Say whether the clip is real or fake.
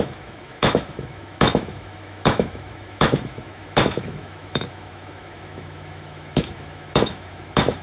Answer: fake